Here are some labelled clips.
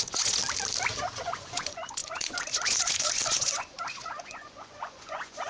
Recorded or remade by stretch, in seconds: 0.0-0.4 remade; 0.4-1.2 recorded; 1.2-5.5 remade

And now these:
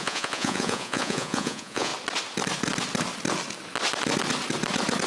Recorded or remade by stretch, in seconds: 0.0-1.9 remade; 1.9-5.1 recorded

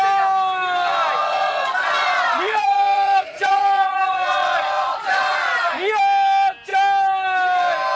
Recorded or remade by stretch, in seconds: 0.0-1.2 recorded; 1.2-6.0 remade; 6.0-8.0 recorded